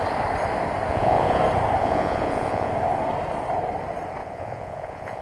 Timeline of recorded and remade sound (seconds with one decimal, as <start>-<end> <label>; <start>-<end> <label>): 0.0-0.9 recorded; 0.9-1.4 remade; 1.4-1.8 recorded; 1.8-2.7 remade; 2.7-4.2 recorded; 4.2-5.2 remade